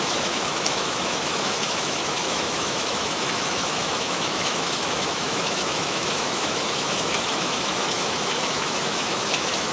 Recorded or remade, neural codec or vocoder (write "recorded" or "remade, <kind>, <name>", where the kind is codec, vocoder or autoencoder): remade, autoencoder, DAC-VAE